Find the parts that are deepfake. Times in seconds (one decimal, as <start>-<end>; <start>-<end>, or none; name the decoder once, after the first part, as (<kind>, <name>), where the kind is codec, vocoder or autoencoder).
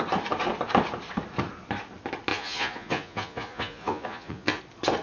2.3-4.6 (vocoder, Vocos)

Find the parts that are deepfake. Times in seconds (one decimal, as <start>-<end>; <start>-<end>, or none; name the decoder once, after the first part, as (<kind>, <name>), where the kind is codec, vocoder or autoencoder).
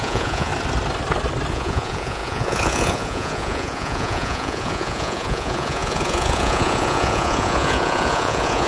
0.0-0.5 (vocoder, Vocos); 1.5-8.7